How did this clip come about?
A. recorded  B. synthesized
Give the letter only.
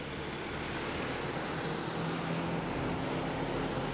A